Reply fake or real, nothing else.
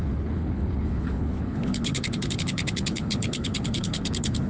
fake